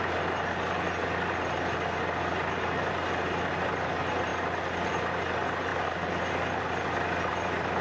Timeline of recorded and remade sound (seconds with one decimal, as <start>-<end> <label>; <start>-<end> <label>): 0.0-7.8 recorded